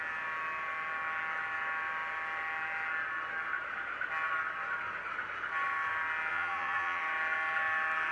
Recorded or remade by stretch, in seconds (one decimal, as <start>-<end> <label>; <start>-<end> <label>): 0.0-6.3 recorded; 6.3-7.0 remade; 7.0-8.1 recorded